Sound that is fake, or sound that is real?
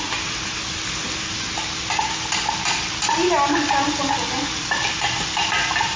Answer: real